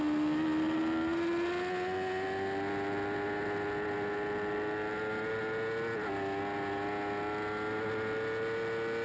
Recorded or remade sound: recorded